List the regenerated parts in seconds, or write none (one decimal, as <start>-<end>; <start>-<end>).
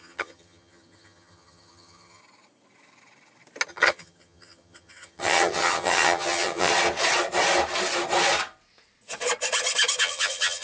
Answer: 0.0-2.2; 3.7-6.7; 10.0-10.6